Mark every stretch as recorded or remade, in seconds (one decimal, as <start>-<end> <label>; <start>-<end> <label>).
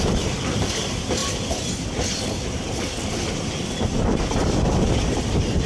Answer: 0.0-5.7 recorded